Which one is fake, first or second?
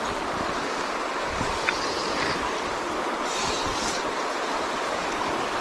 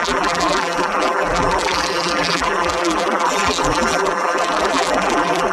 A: second